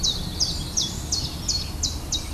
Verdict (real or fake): real